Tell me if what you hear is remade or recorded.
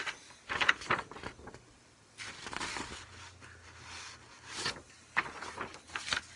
recorded